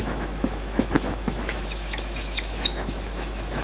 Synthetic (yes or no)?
yes